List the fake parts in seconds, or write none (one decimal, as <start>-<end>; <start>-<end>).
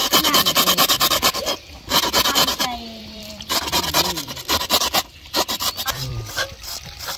0.0-1.8; 3.0-7.2